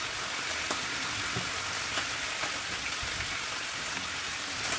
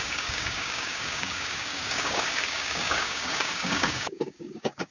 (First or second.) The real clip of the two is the first